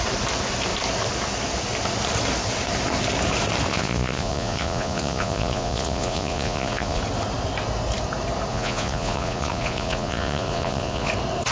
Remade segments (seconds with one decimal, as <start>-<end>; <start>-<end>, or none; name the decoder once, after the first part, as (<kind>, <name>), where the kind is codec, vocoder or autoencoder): 3.7-7.0 (vocoder, Vocos); 8.5-11.1